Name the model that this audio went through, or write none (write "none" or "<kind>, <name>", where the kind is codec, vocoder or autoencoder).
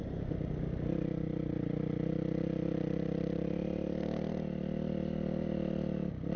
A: none